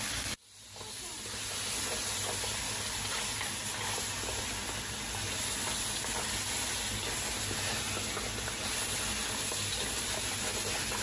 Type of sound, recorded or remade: recorded